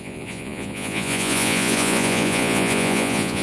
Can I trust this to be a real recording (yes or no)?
no